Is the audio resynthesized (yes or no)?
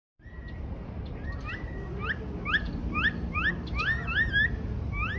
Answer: no